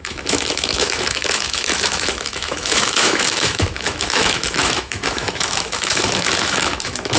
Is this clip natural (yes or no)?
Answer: no